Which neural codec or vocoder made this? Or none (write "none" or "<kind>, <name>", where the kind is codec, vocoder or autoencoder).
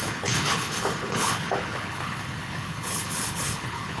codec, HILCodec